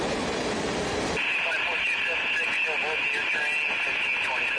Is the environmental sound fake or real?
real